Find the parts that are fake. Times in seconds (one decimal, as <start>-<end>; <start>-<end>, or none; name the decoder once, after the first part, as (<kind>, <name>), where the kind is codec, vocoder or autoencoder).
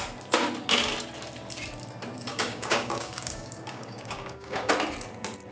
2.3-4.7 (codec, DAC)